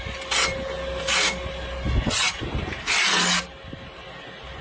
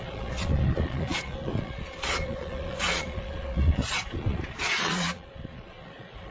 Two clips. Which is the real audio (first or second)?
first